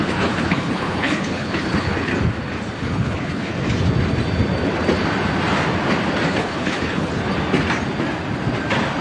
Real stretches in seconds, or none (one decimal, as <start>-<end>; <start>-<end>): 2.1-2.8; 3.5-6.3; 7.2-9.0